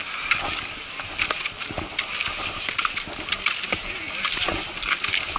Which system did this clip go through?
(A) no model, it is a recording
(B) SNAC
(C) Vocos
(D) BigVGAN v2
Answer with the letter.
A